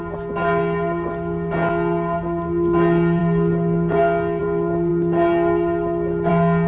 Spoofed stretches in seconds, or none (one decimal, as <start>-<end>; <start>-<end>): none